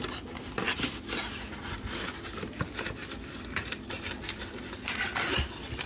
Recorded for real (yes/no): yes